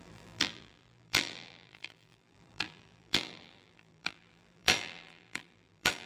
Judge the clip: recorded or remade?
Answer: remade